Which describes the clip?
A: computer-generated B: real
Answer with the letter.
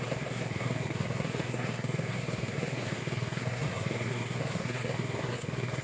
A